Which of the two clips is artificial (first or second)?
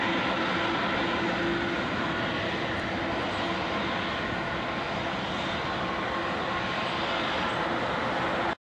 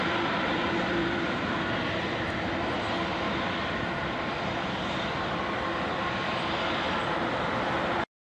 second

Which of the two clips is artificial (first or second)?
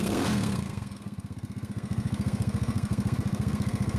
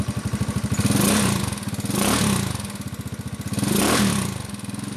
first